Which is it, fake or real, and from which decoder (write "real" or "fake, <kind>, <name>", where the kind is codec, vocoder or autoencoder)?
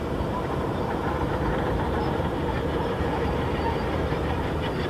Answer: fake, vocoder, BigVGAN v2